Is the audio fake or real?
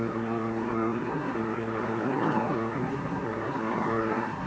fake